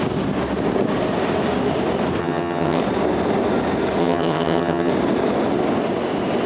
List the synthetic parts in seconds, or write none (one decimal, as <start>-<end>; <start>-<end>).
2.2-2.8; 4.0-4.9